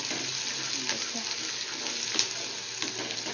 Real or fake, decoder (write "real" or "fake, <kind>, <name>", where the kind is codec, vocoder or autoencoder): real